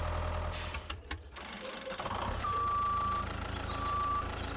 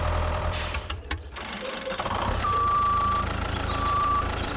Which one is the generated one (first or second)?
second